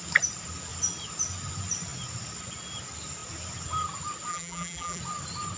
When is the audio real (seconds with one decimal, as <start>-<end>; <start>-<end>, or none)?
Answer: 0.0-4.3; 5.0-5.6